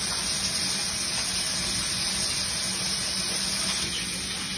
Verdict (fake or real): real